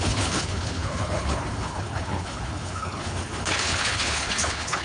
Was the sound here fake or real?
fake